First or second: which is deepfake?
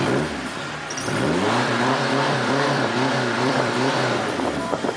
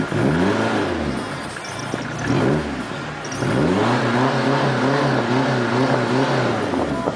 first